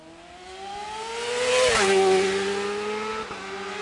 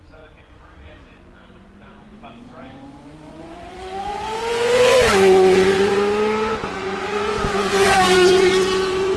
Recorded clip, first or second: first